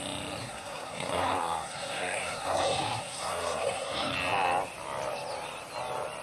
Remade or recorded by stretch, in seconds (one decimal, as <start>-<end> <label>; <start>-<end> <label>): 0.0-0.4 recorded; 0.4-4.1 remade; 4.1-6.2 recorded